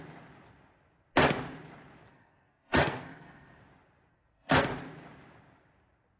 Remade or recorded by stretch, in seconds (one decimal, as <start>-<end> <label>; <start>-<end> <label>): 0.0-2.1 recorded; 2.1-3.6 remade; 3.6-4.1 recorded; 4.1-4.7 remade; 4.7-6.2 recorded